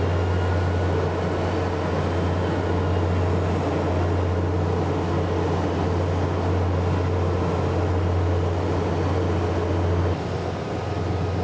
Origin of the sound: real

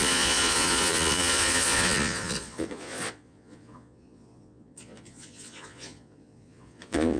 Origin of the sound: fake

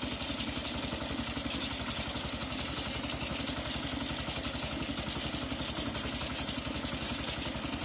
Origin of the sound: real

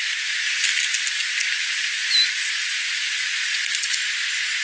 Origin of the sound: real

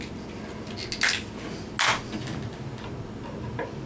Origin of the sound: real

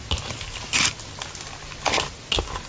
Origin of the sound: real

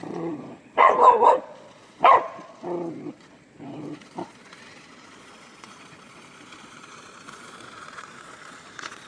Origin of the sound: fake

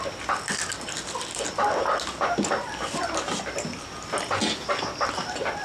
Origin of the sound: real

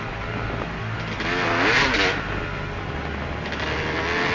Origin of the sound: real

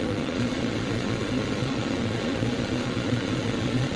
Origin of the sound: fake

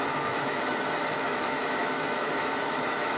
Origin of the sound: fake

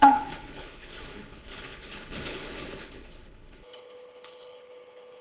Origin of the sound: fake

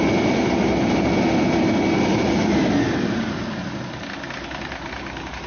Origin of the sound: real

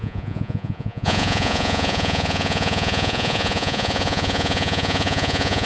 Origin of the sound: fake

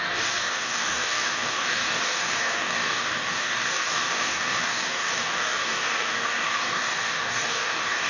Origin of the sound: fake